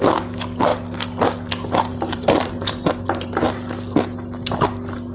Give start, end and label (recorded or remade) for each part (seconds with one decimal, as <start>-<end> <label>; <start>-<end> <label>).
0.0-1.9 recorded; 1.9-3.4 remade; 3.4-5.1 recorded